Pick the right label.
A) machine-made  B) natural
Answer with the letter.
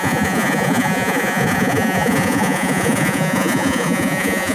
A